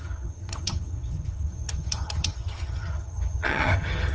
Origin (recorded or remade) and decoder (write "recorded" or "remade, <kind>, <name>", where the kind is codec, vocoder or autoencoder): remade, vocoder, HiFi-GAN